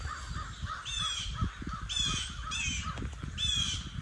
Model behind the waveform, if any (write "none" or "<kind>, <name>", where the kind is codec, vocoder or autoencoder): none